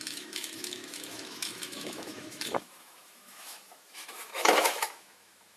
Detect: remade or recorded remade